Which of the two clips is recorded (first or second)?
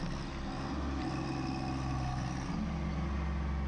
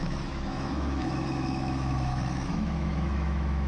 first